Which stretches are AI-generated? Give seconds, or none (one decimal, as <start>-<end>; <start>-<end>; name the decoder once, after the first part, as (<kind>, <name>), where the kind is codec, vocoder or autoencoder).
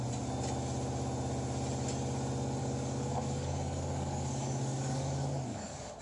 2.6-6.0 (codec, DAC)